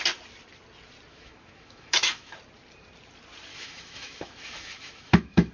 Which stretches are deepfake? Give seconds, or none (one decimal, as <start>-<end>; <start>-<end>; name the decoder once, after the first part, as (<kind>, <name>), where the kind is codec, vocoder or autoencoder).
1.1-2.4 (autoencoder, DAC-VAE); 3.5-5.5